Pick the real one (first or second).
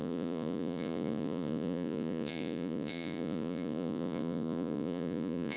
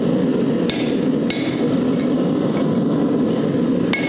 second